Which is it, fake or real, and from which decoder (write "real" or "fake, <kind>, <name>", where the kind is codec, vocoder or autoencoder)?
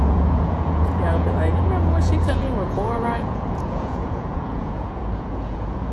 fake, vocoder, Vocos